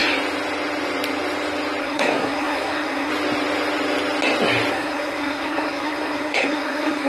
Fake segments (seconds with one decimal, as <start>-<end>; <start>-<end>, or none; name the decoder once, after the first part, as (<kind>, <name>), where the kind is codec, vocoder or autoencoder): 1.8-3.1 (codec, SNAC); 4.7-7.1